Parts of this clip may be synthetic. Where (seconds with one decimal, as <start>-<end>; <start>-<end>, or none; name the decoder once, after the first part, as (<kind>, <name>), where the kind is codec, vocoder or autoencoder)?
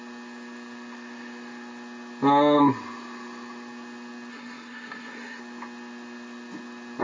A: 4.3-5.4 (codec, SNAC)